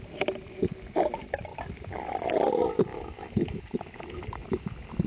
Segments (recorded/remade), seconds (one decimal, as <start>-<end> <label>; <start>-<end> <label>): 0.0-2.9 recorded; 2.9-3.6 remade; 3.6-5.1 recorded